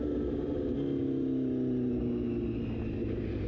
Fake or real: real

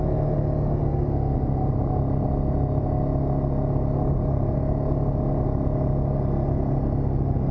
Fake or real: real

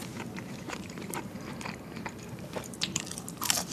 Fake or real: fake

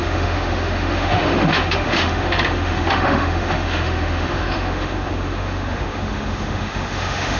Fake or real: fake